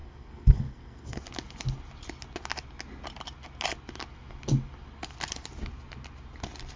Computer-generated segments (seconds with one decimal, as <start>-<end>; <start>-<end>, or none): 0.0-1.2